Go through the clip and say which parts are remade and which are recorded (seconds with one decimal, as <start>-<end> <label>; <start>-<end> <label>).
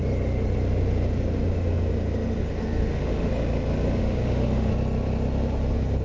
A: 0.0-2.4 recorded; 2.4-3.3 remade; 3.3-4.0 recorded; 4.0-4.7 remade; 4.7-6.0 recorded